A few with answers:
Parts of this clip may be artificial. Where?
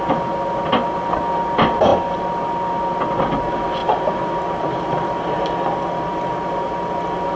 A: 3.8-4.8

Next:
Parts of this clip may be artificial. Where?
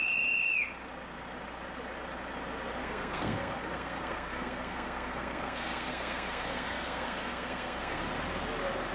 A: 2.8-8.0